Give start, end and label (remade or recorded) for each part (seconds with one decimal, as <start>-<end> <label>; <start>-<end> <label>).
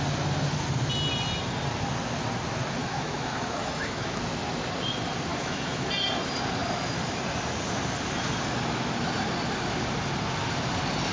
0.0-2.8 recorded; 2.8-4.2 remade; 4.2-5.3 recorded; 5.3-5.9 remade; 5.9-11.1 recorded